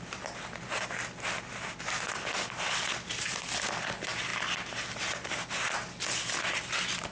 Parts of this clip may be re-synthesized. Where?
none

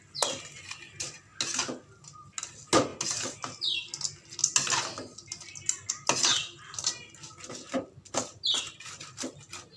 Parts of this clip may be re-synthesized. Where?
none